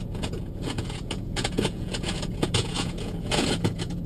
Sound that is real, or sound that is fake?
fake